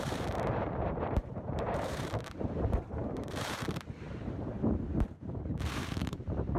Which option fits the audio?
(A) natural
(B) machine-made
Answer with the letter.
B